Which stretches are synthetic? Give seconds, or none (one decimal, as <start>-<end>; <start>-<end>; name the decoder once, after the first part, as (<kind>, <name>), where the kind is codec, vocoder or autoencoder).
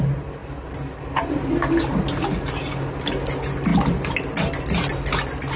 none